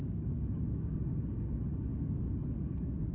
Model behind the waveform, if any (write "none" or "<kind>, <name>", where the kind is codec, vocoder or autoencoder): codec, DAC